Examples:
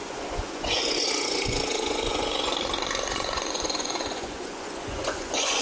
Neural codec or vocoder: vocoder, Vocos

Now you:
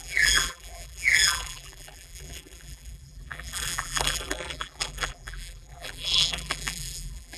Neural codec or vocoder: vocoder, BigVGAN v2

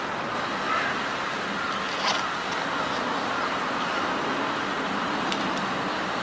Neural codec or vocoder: none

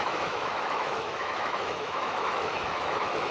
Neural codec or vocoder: autoencoder, DAC-VAE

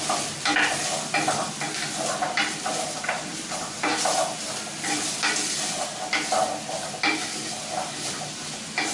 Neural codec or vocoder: none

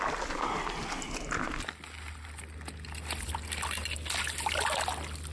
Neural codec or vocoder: none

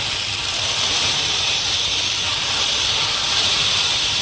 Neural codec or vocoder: vocoder, BigVGAN v2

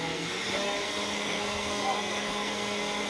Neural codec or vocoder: codec, SNAC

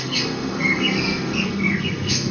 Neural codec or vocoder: codec, SNAC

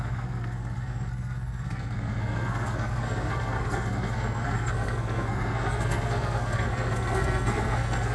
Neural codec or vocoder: codec, SNAC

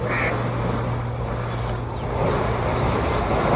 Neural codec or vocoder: none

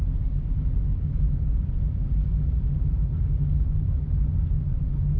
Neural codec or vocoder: none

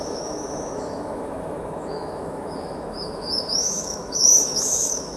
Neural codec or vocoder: autoencoder, DAC-VAE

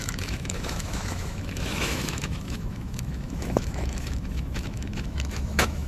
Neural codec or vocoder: autoencoder, DAC-VAE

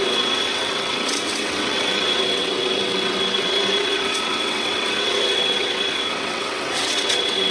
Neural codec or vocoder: vocoder, WaveNeXt